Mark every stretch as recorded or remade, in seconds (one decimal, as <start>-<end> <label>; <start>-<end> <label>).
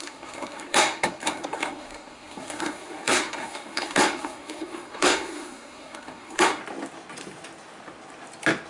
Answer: 0.0-6.6 remade; 6.6-8.7 recorded